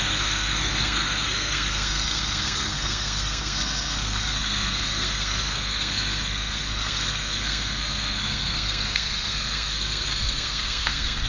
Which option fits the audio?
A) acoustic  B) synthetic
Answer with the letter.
B